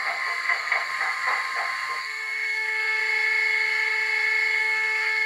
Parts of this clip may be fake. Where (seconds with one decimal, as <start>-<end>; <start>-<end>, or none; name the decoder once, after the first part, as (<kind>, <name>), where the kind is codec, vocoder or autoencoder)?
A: 0.0-0.9 (codec, SNAC); 2.0-3.0; 4.6-5.3